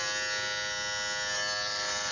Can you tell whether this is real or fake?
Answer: real